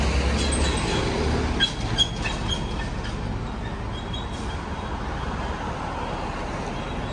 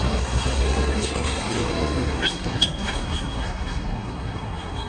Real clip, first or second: first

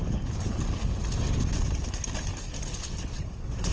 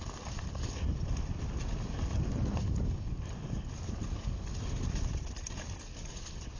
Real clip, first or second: first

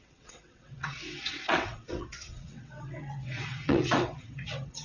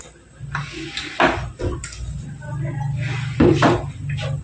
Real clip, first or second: second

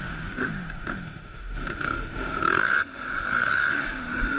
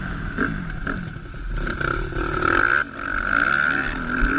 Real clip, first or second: second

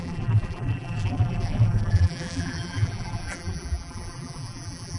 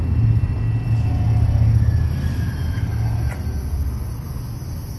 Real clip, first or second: second